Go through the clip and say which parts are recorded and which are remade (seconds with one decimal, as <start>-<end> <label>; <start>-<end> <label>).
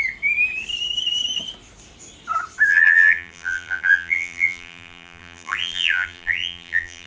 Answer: 0.0-2.7 recorded; 2.7-7.1 remade